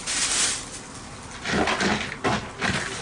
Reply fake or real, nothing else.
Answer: real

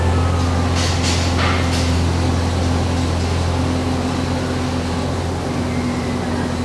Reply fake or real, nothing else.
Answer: real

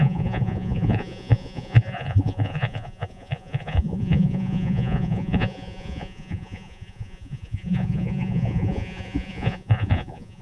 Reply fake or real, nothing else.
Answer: fake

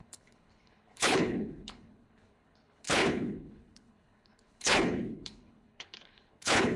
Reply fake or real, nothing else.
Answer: fake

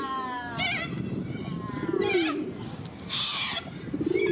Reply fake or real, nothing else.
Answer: real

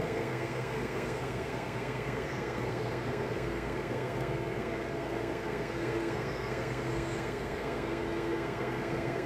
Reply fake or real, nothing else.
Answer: fake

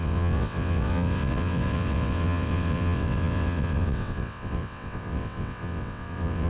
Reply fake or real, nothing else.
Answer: fake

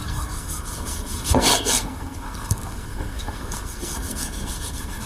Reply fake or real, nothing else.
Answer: fake